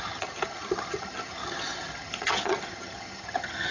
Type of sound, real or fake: fake